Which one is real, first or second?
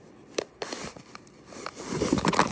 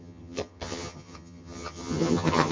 first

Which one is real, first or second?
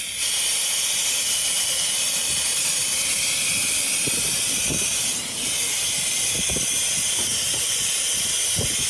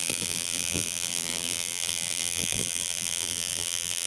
first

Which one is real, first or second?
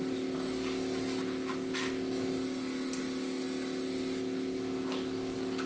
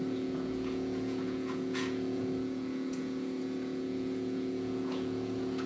first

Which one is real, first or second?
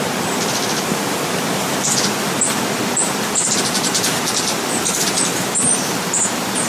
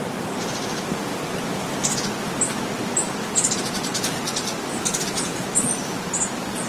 second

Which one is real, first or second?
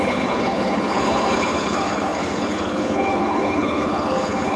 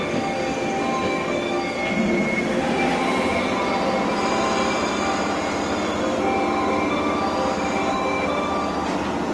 second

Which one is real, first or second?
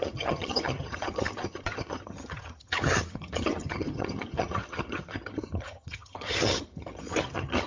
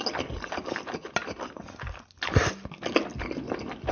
second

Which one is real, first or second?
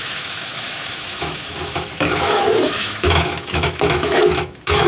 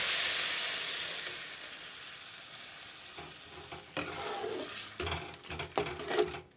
second